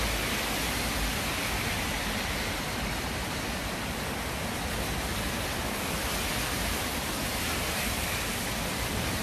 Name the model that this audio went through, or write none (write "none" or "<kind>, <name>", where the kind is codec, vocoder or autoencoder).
none